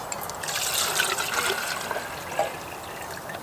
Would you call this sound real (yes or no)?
yes